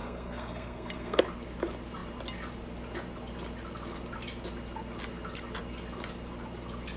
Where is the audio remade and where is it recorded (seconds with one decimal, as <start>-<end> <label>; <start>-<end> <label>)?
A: 0.0-1.2 remade; 1.2-7.0 recorded